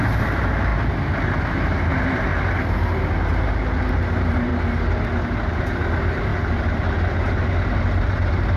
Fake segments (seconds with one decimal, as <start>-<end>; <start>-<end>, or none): 0.0-0.7; 1.4-2.3; 3.9-4.5; 5.6-6.3; 7.3-8.6